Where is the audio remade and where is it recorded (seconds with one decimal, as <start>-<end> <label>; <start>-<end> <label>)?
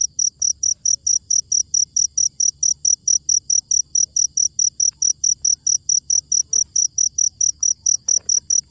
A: 0.0-6.8 recorded; 6.8-8.2 remade; 8.2-8.7 recorded